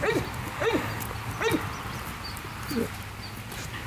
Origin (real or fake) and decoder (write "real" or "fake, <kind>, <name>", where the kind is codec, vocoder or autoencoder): real